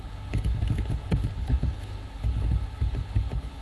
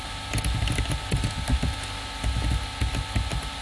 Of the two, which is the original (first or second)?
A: second